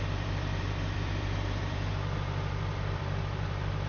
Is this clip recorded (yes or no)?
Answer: no